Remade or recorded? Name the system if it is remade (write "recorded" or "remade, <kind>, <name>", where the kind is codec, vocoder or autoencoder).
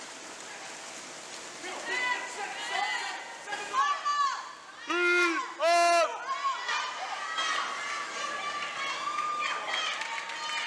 recorded